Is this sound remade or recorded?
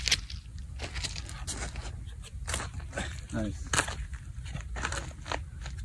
recorded